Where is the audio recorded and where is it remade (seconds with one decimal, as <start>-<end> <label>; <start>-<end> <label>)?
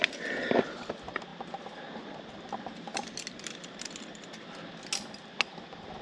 0.0-6.0 recorded